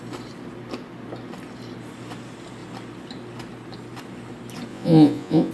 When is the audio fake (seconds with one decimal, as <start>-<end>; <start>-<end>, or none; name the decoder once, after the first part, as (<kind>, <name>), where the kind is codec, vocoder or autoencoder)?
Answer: 4.7-5.5 (vocoder, Vocos)